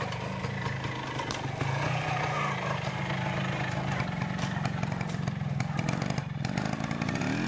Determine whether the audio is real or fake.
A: real